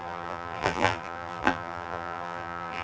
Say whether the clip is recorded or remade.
remade